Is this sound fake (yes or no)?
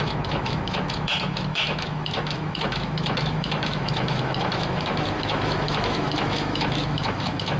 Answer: yes